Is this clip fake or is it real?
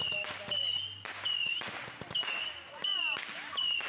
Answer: real